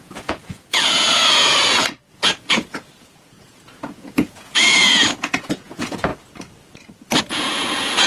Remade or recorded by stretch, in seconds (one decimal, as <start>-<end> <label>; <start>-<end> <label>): 0.0-6.1 remade; 6.1-7.2 recorded; 7.2-8.1 remade